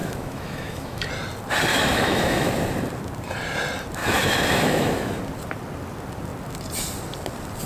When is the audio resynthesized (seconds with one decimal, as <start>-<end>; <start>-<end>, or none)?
0.0-1.1; 1.7-2.5; 4.0-5.2